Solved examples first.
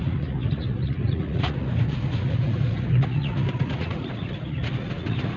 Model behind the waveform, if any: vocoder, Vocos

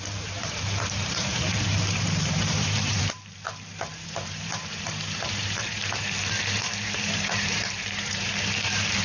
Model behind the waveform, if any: vocoder, BigVGAN v2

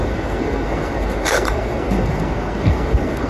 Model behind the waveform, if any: codec, SNAC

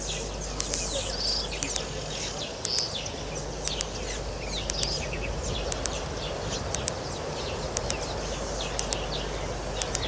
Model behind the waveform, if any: none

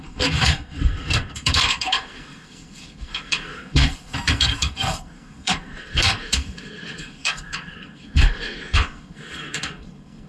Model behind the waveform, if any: codec, SNAC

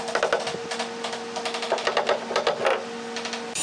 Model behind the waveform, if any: none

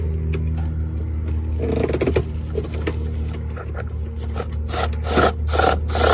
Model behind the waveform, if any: none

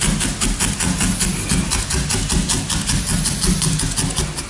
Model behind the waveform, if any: none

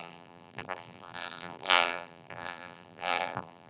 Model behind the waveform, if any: vocoder, BigVGAN v2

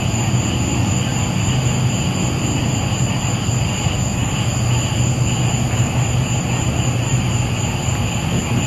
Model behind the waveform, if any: none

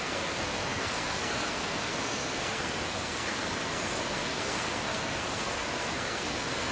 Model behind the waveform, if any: codec, SNAC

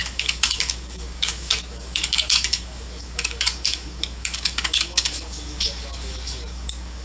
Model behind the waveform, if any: codec, DAC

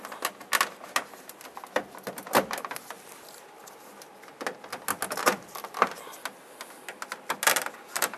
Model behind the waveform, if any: none